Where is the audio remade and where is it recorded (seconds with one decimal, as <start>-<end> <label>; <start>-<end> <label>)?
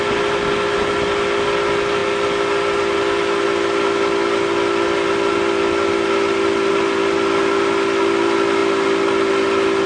0.0-9.9 recorded